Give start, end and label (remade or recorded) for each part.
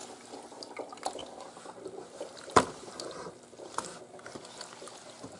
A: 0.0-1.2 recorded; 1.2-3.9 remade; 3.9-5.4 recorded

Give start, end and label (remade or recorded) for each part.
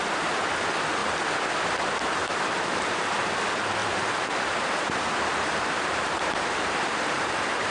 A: 0.0-2.2 recorded; 2.2-2.9 remade; 2.9-3.8 recorded; 3.8-7.7 remade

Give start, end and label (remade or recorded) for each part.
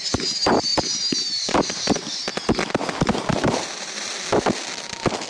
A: 0.0-3.3 recorded; 3.3-4.1 remade; 4.1-5.3 recorded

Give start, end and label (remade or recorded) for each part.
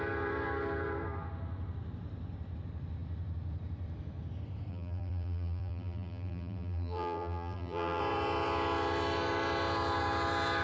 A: 0.0-4.7 recorded; 4.7-8.0 remade; 8.0-10.6 recorded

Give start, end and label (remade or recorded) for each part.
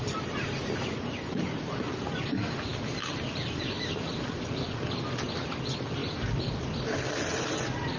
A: 0.0-1.8 remade; 1.8-8.0 recorded